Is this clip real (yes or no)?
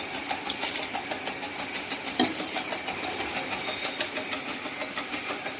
yes